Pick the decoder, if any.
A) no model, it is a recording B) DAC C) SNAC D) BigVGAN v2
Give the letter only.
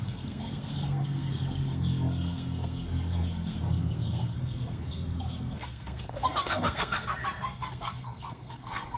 C